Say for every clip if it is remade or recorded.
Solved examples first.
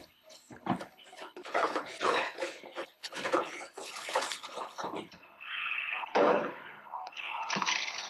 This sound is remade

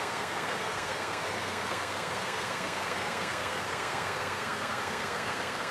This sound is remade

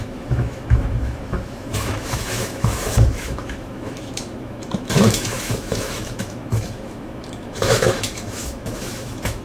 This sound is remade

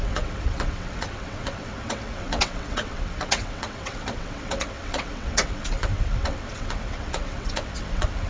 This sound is remade